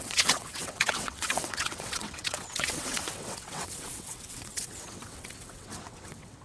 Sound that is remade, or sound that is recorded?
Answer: remade